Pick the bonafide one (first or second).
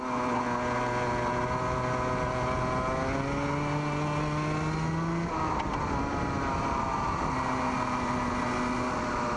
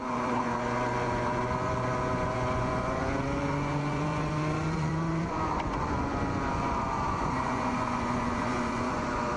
first